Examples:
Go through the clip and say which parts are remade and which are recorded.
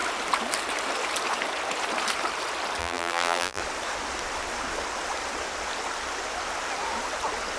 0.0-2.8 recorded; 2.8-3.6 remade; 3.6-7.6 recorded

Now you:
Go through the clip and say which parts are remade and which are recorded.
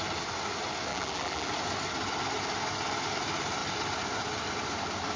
0.0-0.9 recorded; 0.9-1.5 remade; 1.5-5.2 recorded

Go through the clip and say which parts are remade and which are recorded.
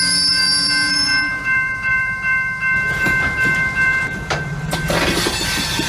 0.0-5.9 remade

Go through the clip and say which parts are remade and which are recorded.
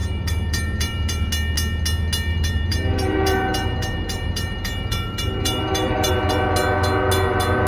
0.0-1.3 remade; 1.3-2.3 recorded; 2.3-6.1 remade; 6.1-7.7 recorded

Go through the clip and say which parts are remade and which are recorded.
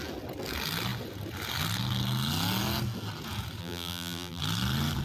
0.0-3.6 recorded; 3.6-4.4 remade; 4.4-5.0 recorded